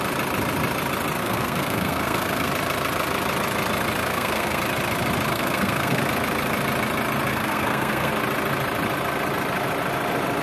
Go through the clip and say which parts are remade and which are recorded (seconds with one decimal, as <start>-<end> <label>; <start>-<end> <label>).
0.0-1.2 recorded; 1.2-2.5 remade; 2.5-4.0 recorded; 4.0-4.6 remade; 4.6-5.3 recorded; 5.3-6.0 remade; 6.0-7.3 recorded; 7.3-8.1 remade; 8.1-10.4 recorded